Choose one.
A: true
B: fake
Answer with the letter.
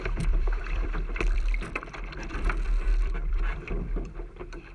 B